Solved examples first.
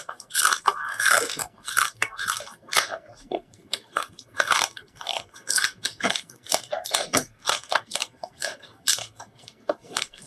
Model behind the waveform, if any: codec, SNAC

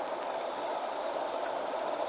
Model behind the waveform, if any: none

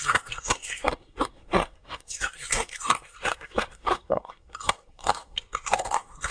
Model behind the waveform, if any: codec, SNAC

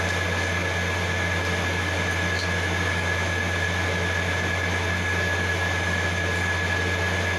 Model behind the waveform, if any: none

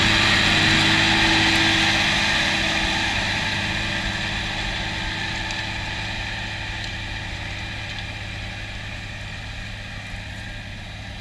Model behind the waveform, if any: none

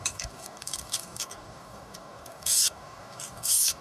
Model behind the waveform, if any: codec, DAC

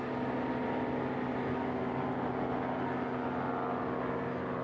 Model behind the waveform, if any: none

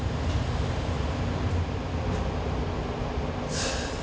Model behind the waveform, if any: none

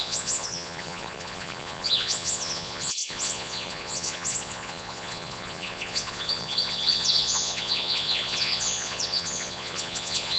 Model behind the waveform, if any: vocoder, Vocos